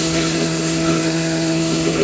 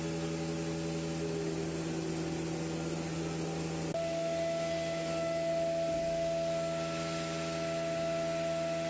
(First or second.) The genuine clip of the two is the second